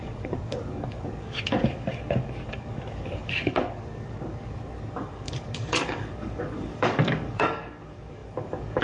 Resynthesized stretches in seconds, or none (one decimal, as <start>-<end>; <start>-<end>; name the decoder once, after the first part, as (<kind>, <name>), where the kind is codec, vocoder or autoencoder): 0.0-8.8 (codec, DAC)